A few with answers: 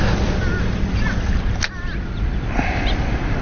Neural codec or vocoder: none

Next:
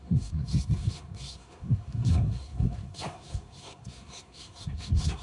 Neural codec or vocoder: codec, SNAC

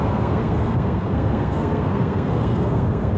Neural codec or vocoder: codec, SNAC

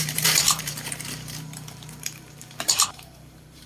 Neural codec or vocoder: vocoder, BigVGAN v2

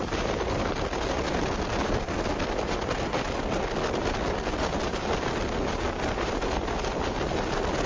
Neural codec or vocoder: none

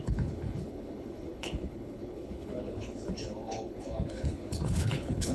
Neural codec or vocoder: codec, HILCodec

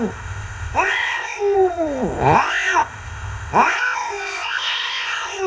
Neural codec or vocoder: codec, ZipCodec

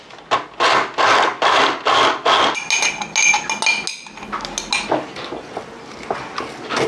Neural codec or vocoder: none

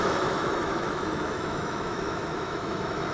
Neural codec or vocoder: autoencoder, DAC-VAE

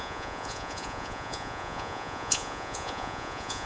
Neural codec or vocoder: vocoder, Vocos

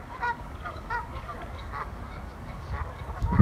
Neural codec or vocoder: codec, DAC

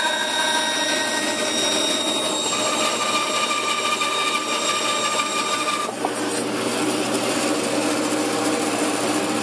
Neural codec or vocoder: none